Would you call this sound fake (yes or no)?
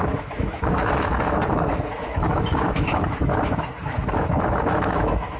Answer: yes